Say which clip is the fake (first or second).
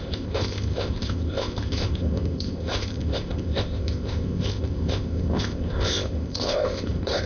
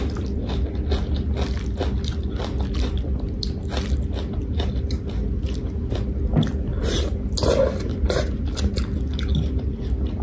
first